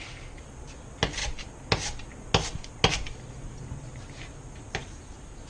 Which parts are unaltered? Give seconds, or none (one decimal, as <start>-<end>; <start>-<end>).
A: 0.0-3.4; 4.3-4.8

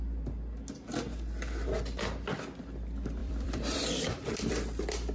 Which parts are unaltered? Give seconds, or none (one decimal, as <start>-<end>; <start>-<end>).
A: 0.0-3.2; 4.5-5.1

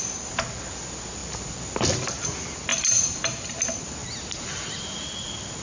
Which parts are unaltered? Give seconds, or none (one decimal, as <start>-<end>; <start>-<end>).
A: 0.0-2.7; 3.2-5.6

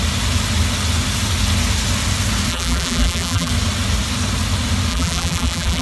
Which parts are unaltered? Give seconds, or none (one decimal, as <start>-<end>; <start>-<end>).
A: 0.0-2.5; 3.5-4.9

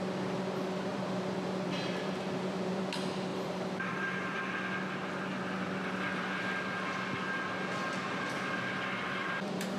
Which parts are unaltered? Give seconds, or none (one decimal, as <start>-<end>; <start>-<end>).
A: 0.0-0.9; 2.8-3.3; 4.4-9.2

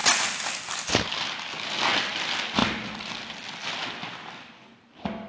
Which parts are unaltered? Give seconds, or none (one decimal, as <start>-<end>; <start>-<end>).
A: 0.9-2.6; 3.1-5.3